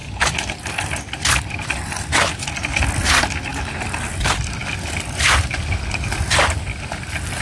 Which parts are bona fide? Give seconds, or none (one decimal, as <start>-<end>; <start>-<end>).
0.0-7.4